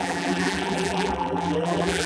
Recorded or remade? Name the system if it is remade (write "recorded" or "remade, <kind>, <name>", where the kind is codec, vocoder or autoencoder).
remade, vocoder, BigVGAN v2